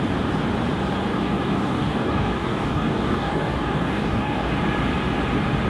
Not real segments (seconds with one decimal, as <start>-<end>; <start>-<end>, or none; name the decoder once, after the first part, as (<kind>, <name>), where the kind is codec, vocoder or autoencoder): 1.1-4.5 (codec, DAC)